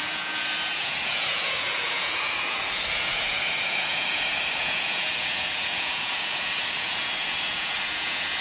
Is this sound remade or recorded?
remade